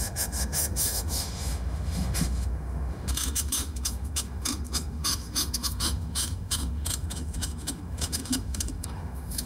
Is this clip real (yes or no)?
no